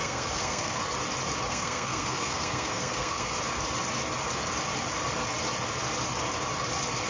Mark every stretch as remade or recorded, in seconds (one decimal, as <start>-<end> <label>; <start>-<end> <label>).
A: 0.0-0.8 remade; 0.8-1.5 recorded; 1.5-3.3 remade; 3.3-7.1 recorded